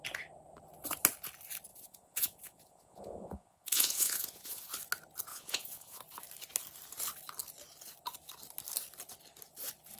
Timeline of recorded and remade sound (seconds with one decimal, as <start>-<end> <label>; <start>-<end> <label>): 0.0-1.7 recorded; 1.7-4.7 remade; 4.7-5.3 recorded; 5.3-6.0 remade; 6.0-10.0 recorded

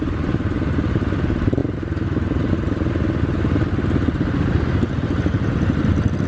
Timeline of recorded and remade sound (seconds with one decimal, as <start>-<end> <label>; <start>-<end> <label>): 0.0-6.3 recorded

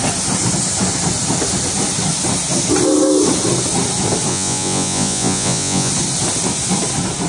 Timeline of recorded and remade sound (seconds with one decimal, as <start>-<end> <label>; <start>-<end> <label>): 0.0-4.3 recorded; 4.3-5.9 remade; 5.9-7.3 recorded

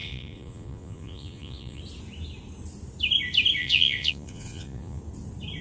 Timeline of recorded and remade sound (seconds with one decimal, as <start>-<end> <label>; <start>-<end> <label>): 0.0-1.8 remade; 1.8-3.6 recorded; 3.6-5.0 remade; 5.0-5.6 recorded